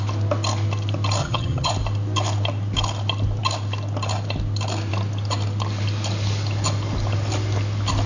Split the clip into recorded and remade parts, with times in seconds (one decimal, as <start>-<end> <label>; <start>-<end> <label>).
0.0-1.2 recorded; 1.2-1.7 remade; 1.7-8.1 recorded

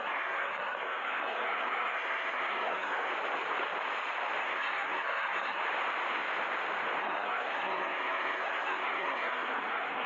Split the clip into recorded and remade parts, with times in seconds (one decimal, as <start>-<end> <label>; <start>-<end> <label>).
0.0-3.1 remade; 3.1-4.4 recorded; 4.4-5.6 remade; 5.6-7.0 recorded; 7.0-10.1 remade

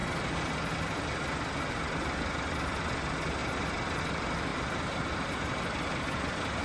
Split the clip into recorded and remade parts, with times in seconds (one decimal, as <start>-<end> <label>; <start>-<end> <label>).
0.0-3.4 recorded; 3.4-4.0 remade; 4.0-4.5 recorded; 4.5-6.6 remade

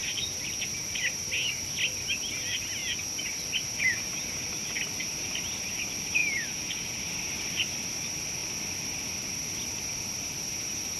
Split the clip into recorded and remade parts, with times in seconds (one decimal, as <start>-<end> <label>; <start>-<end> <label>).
0.0-11.0 recorded

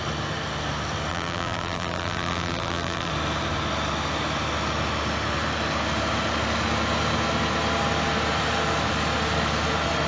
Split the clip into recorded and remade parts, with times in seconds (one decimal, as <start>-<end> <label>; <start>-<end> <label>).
0.0-1.1 recorded; 1.1-3.1 remade; 3.1-10.1 recorded

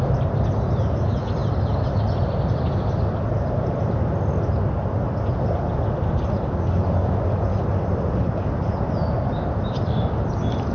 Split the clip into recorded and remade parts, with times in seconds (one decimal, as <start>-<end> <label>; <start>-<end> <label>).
0.0-10.7 recorded

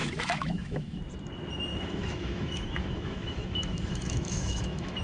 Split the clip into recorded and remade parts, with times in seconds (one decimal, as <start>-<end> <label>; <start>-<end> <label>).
0.0-1.0 remade; 1.0-1.7 recorded; 1.7-5.0 remade